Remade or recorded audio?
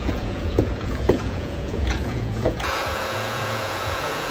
remade